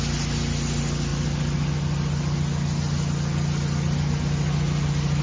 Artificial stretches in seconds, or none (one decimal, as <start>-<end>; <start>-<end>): none